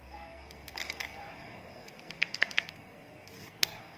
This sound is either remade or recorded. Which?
remade